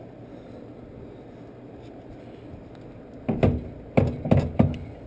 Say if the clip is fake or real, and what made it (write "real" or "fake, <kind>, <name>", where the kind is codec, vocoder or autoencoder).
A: real